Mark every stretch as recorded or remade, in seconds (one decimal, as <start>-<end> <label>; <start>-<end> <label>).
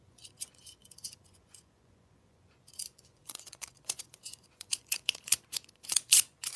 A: 0.0-6.6 remade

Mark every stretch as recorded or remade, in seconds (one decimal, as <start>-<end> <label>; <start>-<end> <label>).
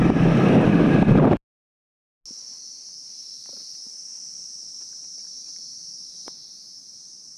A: 0.0-4.1 recorded; 4.1-7.4 remade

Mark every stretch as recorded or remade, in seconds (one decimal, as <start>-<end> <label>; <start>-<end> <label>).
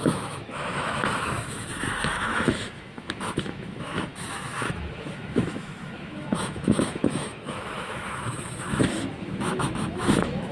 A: 0.0-10.5 remade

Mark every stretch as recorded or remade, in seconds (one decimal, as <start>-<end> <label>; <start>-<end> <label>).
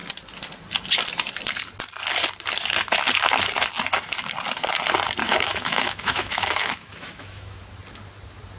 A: 0.0-5.2 recorded; 5.2-7.6 remade; 7.6-8.6 recorded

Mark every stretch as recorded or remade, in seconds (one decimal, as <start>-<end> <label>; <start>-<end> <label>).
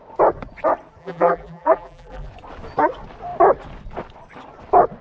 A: 0.0-1.0 recorded; 1.0-2.3 remade; 2.3-5.0 recorded